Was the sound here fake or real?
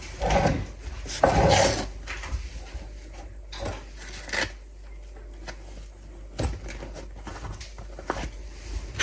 real